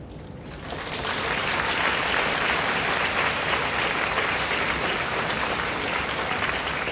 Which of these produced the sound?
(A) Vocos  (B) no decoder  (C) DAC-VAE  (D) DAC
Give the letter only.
B